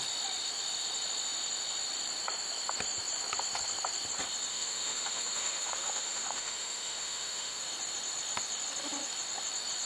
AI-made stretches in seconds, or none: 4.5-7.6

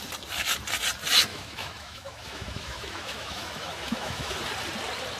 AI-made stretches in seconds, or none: 1.3-4.4

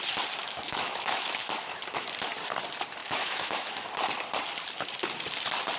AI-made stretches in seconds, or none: 0.4-1.8; 3.0-3.9

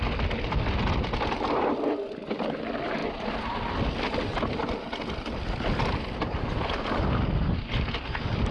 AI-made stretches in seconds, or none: none

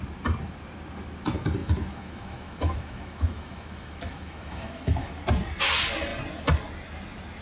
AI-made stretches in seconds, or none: 1.6-5.1

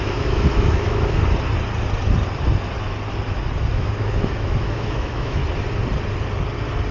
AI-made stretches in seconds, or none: 0.0-1.2; 3.7-5.4

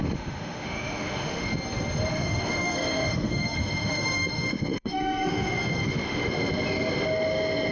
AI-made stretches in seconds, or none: 0.0-1.5; 2.1-6.3